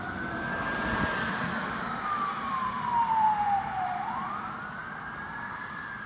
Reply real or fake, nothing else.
fake